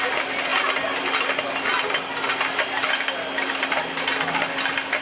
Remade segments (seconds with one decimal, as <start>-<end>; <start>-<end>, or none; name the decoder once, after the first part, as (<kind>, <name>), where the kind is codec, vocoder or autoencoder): none